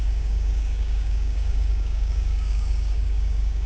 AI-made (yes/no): yes